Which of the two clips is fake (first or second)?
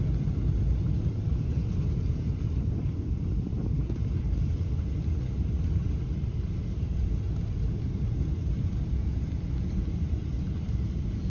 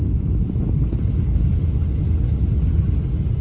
first